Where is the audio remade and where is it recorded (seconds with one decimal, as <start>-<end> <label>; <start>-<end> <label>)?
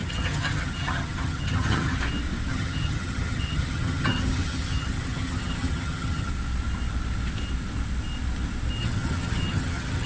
0.0-2.0 remade; 2.0-2.5 recorded; 2.5-6.3 remade; 6.3-8.8 recorded; 8.8-10.1 remade